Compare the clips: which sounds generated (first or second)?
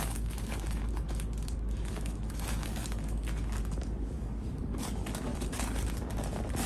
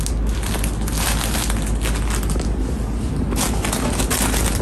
first